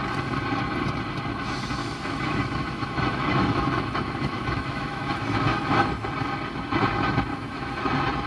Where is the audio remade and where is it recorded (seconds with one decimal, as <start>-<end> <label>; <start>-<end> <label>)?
0.0-1.8 recorded; 1.8-5.9 remade; 5.9-7.3 recorded; 7.3-7.8 remade; 7.8-8.3 recorded